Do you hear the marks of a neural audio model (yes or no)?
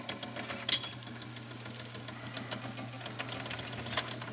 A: no